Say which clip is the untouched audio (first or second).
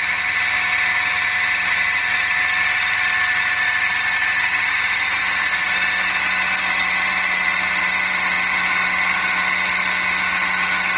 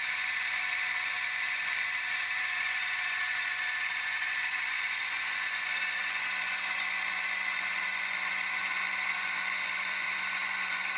first